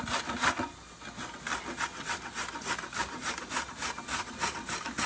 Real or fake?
real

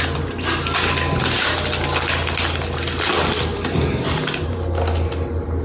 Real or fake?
real